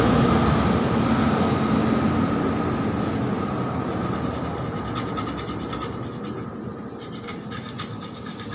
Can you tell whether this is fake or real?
real